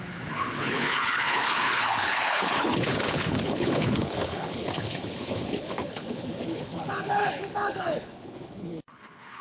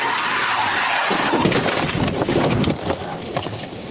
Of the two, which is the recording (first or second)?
second